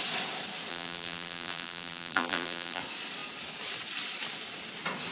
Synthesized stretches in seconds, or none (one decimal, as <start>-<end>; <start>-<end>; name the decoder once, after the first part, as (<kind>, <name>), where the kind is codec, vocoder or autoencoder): 0.7-2.8 (vocoder, BigVGAN v2)